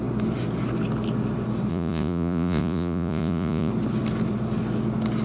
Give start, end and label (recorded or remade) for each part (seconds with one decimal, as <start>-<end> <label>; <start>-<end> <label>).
0.0-1.7 recorded; 1.7-3.7 remade; 3.7-5.2 recorded